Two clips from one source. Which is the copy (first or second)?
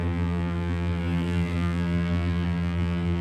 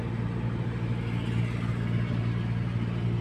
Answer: first